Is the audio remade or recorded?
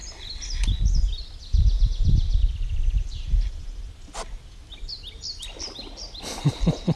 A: recorded